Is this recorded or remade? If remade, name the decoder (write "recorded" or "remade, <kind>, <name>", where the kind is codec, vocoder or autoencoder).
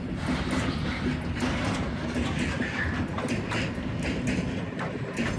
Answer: recorded